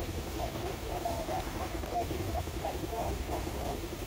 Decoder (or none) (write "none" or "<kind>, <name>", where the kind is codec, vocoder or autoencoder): codec, DAC